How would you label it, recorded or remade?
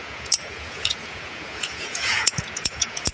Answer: remade